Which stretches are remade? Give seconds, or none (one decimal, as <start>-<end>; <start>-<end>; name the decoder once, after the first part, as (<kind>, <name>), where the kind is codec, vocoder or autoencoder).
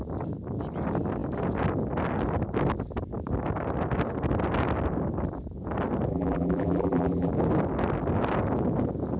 6.1-7.3 (vocoder, BigVGAN v2)